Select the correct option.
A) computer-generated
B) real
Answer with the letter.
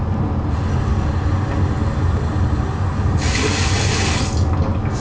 B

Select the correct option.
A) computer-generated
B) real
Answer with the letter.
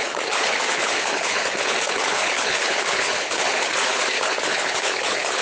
A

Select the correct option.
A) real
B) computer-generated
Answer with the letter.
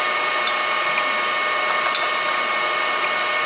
A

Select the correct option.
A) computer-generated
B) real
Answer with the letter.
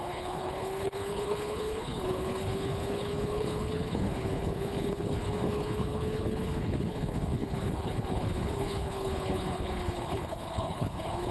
A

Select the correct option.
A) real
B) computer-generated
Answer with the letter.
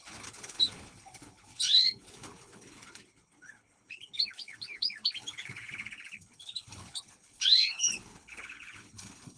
B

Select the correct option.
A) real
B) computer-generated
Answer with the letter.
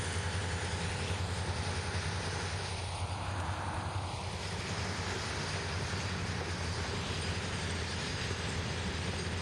A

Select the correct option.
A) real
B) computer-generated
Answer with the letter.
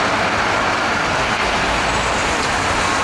A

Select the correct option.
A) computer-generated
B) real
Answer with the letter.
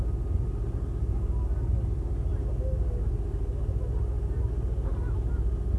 B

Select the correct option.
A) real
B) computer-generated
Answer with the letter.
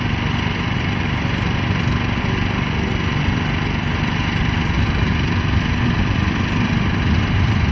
A